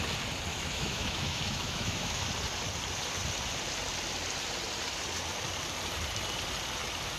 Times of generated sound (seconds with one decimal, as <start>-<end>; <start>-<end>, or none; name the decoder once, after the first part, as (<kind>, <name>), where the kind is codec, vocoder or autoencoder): 0.5-2.2 (autoencoder, DAC-VAE)